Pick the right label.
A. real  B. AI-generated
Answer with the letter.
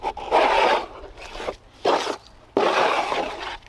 A